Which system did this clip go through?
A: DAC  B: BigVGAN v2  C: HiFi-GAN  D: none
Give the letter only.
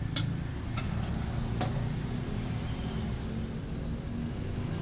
D